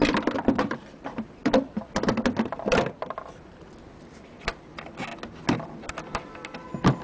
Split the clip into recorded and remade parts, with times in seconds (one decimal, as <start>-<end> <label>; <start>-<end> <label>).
0.0-7.0 remade